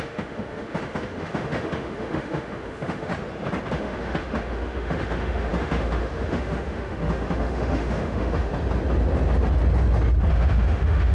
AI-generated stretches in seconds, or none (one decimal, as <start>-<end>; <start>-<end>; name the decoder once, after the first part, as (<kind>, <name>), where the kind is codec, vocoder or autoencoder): 0.0-3.1 (autoencoder, DAC-VAE); 3.7-8.5; 10.3-11.1